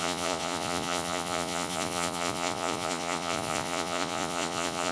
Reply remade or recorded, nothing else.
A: remade